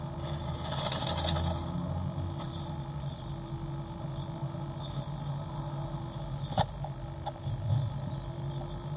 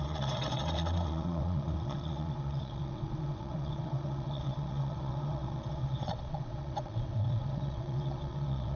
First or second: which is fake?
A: second